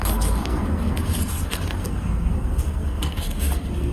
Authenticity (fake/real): fake